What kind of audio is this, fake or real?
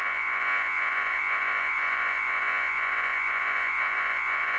fake